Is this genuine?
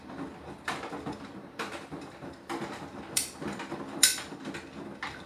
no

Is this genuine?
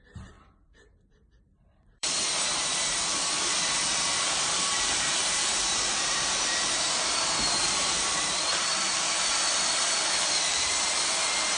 no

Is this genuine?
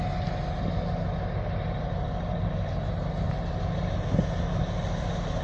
yes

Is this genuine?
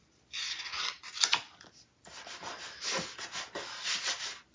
yes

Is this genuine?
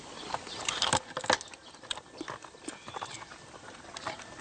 yes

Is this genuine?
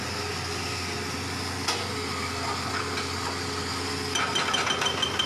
yes